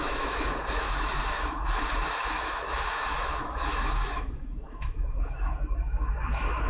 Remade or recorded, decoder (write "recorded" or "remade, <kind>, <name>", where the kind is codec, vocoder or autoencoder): remade, autoencoder, DAC-VAE